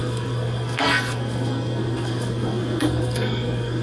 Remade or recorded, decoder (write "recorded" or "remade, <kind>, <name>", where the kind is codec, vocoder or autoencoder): remade, codec, SNAC